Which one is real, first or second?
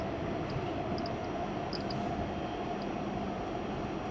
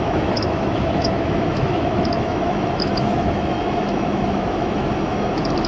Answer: first